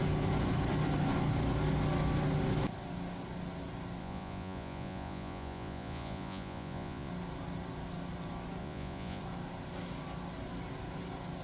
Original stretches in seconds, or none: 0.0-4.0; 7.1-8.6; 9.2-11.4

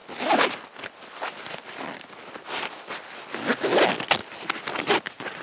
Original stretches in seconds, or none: 0.0-5.4

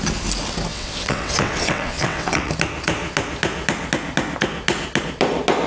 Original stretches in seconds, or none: 0.0-0.7; 2.5-5.7

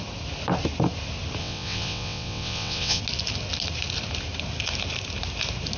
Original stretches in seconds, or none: 0.0-1.4; 3.0-5.8

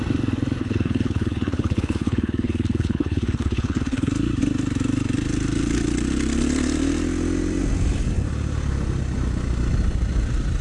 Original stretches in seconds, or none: 0.0-0.6; 4.1-10.6

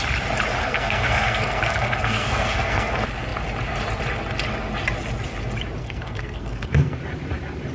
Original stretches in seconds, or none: 0.0-0.6; 2.9-5.8; 7.0-7.7

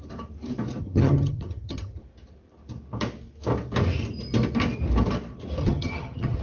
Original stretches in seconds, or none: 0.0-0.8; 2.0-5.6

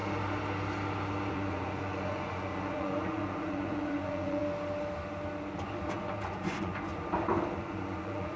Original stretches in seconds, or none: 0.0-1.3; 4.4-5.9; 6.9-7.6